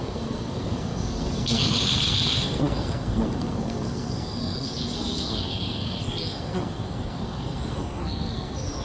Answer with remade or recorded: remade